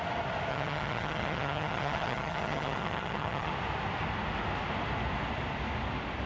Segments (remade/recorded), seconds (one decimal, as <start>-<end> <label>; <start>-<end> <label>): 0.0-0.5 recorded; 0.5-3.5 remade; 3.5-6.3 recorded